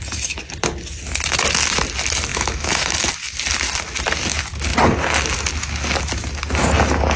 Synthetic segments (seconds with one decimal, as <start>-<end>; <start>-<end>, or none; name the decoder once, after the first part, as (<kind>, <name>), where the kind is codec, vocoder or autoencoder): 2.3-3.1 (autoencoder, DAC-VAE)

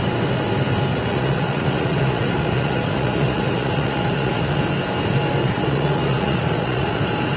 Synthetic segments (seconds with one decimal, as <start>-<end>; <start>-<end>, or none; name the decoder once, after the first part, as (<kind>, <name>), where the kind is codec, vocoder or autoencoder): 0.9-4.6 (vocoder, Vocos); 5.4-7.0